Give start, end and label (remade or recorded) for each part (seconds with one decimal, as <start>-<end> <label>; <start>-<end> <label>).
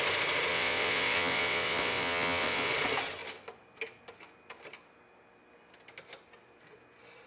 0.0-0.5 recorded; 0.5-2.7 remade; 2.7-7.3 recorded